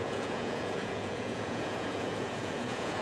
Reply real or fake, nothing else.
fake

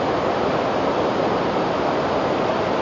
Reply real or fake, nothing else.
real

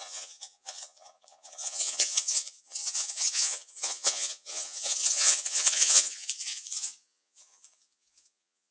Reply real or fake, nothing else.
fake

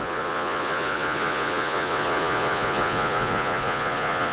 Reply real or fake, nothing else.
fake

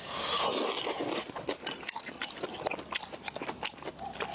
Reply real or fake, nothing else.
real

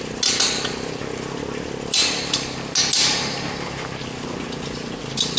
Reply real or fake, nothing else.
real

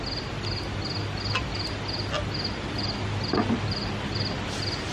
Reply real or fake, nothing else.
real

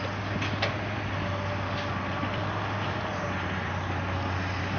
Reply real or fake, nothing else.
real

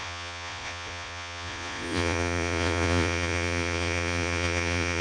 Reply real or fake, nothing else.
fake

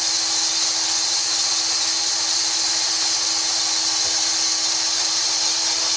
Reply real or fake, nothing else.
real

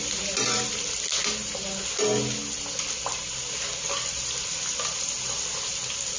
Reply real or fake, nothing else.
real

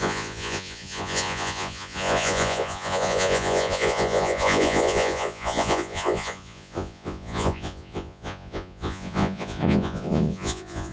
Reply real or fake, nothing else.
fake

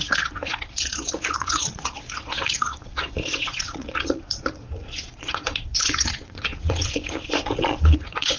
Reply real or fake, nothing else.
fake